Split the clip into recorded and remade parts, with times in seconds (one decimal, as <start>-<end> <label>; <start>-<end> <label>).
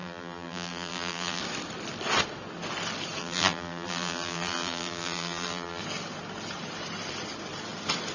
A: 0.0-1.4 remade; 1.4-3.2 recorded; 3.2-5.8 remade; 5.8-8.1 recorded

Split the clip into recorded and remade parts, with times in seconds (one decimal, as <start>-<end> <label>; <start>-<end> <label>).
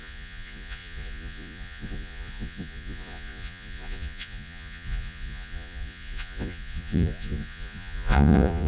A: 0.0-8.7 remade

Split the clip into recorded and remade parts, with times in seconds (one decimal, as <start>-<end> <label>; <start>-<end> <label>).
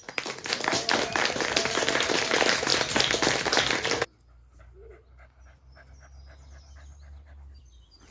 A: 0.0-8.1 recorded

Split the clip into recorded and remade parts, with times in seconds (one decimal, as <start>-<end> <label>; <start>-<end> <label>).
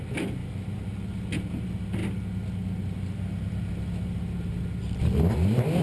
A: 0.0-5.8 recorded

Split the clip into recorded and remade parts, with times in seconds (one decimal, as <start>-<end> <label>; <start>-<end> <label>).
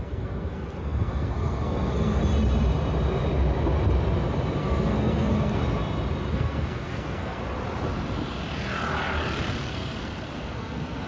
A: 0.0-2.2 remade; 2.2-4.6 recorded; 4.6-5.6 remade; 5.6-6.3 recorded; 6.3-7.4 remade; 7.4-9.6 recorded; 9.6-11.1 remade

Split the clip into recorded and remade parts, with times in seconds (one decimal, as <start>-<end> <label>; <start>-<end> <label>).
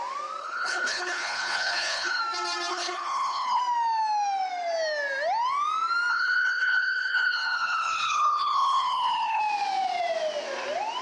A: 0.0-0.4 recorded; 0.4-2.2 remade; 2.2-2.7 recorded; 2.7-3.6 remade; 3.6-6.1 recorded; 6.1-9.4 remade; 9.4-11.0 recorded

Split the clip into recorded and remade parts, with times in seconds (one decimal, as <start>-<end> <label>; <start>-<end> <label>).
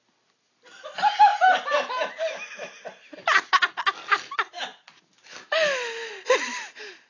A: 0.0-7.1 recorded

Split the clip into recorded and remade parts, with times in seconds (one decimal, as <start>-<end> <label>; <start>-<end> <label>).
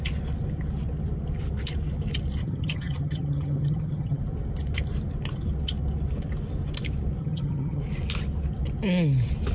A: 0.0-2.4 recorded; 2.4-4.2 remade; 4.2-7.2 recorded; 7.2-7.8 remade; 7.8-9.5 recorded